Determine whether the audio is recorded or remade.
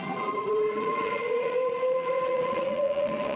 remade